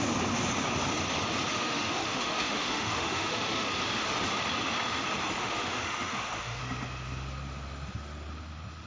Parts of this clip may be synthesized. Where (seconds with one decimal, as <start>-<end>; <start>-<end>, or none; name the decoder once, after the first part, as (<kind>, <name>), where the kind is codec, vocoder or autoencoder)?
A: 1.5-3.7 (autoencoder, DAC-VAE); 5.4-6.6